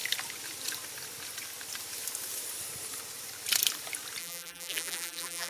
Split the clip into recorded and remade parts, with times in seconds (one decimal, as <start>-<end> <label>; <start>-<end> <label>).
0.0-4.2 recorded; 4.2-5.5 remade